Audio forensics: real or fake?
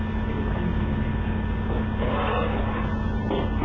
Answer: real